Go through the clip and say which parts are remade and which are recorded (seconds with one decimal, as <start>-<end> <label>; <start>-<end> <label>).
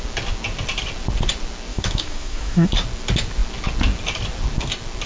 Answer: 0.0-1.7 recorded; 1.7-2.7 remade; 2.7-5.1 recorded